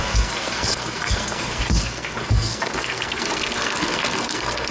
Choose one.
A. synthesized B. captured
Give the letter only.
A